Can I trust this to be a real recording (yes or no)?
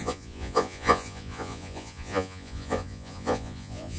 no